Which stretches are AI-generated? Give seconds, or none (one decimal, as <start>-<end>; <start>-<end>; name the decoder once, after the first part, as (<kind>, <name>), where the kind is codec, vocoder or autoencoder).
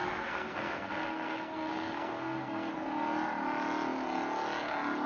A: 0.0-2.7 (codec, SNAC)